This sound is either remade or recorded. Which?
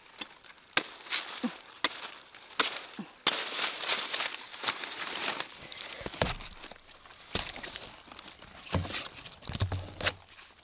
recorded